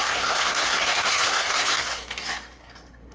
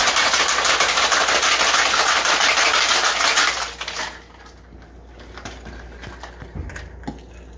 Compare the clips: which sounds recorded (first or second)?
second